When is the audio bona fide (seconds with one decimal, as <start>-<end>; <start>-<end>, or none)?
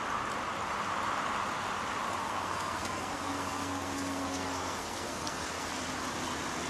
0.0-2.2; 5.7-6.7